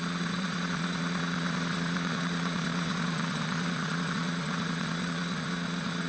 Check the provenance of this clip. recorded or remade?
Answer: remade